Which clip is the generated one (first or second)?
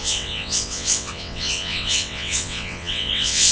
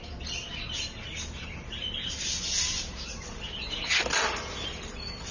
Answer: first